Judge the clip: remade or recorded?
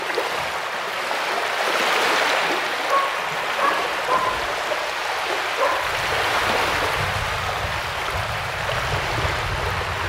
recorded